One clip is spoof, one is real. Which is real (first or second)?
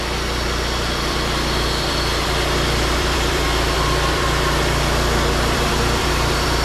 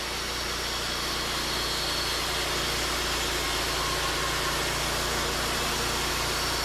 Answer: second